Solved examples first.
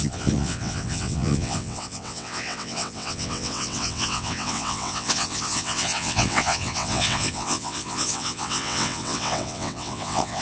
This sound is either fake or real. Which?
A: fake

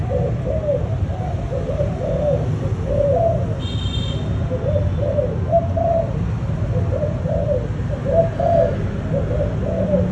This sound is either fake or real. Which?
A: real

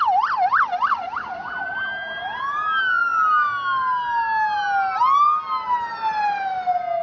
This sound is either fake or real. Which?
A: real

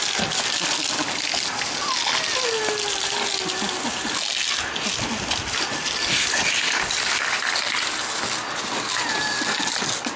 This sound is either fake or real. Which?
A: real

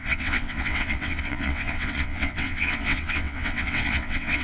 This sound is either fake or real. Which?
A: fake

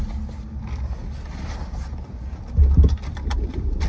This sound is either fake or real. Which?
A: real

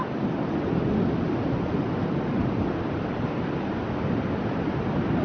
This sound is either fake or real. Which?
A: real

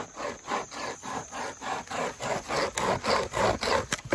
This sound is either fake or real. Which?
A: real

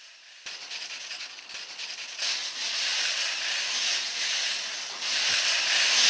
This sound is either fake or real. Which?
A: real